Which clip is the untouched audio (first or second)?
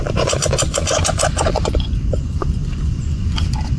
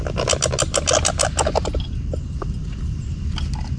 second